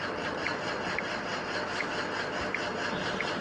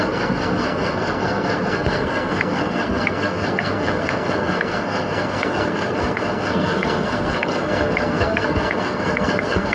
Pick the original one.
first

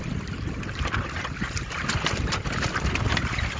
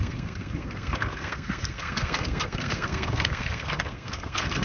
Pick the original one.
first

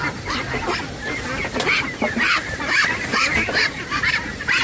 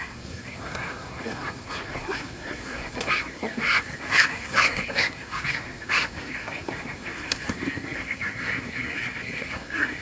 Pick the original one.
first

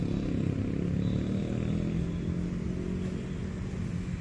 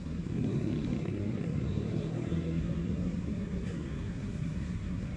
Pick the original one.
first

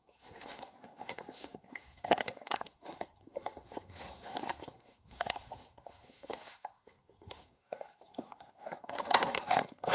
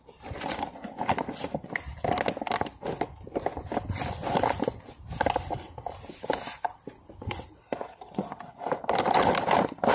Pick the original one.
second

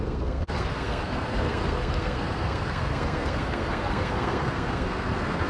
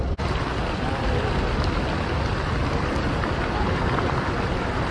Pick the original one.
second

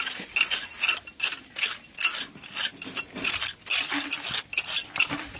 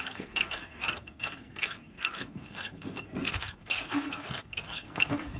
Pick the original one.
first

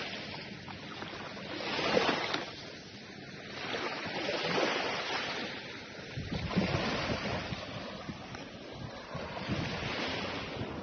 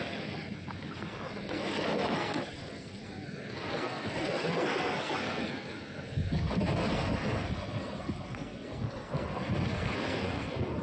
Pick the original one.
first